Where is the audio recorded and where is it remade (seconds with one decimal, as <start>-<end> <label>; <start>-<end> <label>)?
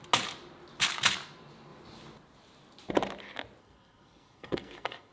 0.0-3.6 recorded; 3.6-5.1 remade